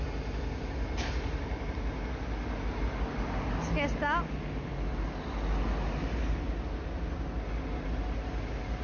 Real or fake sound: real